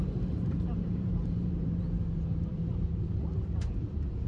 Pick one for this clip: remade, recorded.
remade